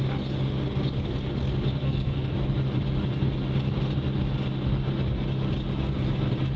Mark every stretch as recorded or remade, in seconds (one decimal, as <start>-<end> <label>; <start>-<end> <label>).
0.0-1.8 recorded; 1.8-2.3 remade; 2.3-6.6 recorded